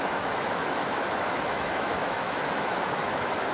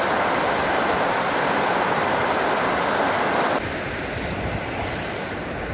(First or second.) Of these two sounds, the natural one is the second